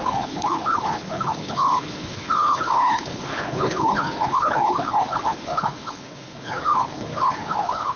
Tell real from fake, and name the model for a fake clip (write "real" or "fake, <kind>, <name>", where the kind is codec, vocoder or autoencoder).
fake, codec, HILCodec